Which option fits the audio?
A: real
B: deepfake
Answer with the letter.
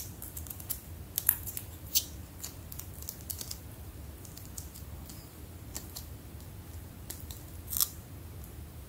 A